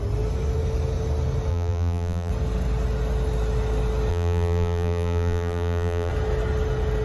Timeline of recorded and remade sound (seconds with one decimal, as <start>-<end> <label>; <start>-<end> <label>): 0.0-1.5 recorded; 1.5-2.3 remade; 2.3-4.1 recorded; 4.1-6.1 remade; 6.1-7.0 recorded